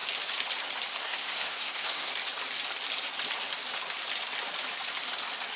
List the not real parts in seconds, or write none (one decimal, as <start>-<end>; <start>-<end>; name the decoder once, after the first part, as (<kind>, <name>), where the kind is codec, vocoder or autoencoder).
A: 1.0-2.1 (codec, SNAC)

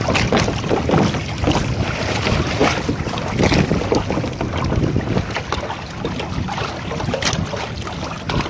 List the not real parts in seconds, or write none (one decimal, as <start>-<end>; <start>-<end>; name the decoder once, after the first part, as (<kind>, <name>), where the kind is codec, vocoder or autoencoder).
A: none

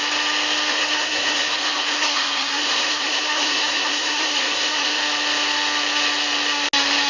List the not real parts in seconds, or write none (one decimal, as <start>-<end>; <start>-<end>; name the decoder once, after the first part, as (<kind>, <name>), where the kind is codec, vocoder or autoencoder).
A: 0.7-5.0 (codec, SNAC)

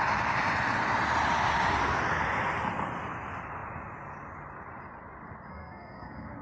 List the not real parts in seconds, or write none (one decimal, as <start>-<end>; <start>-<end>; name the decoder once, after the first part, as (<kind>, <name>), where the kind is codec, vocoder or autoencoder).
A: 5.5-6.4 (codec, SNAC)

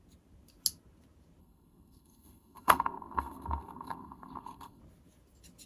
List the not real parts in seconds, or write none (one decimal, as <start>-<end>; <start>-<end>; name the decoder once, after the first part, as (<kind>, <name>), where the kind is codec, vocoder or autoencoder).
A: 1.4-4.8 (codec, SNAC)